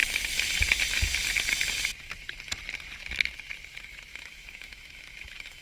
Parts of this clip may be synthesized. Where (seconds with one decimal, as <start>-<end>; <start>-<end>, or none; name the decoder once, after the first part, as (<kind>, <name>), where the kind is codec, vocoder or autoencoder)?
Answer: 4.1-5.6 (autoencoder, DAC-VAE)